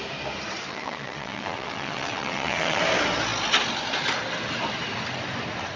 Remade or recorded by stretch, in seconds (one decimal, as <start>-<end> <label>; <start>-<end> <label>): 0.0-0.7 recorded; 0.7-2.8 remade; 2.8-5.8 recorded